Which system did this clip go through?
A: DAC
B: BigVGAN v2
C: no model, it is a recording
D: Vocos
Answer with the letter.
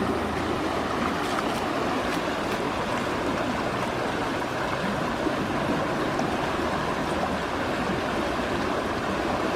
C